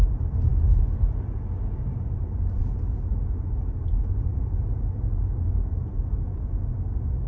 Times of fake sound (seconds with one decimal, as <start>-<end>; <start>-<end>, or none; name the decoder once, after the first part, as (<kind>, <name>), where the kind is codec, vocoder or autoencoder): none